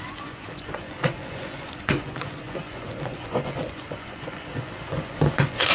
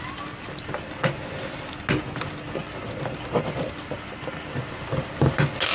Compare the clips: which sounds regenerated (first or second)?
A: first